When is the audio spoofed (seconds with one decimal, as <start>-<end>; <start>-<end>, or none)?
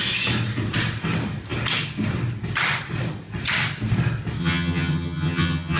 4.4-5.8